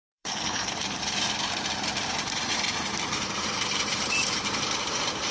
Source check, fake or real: fake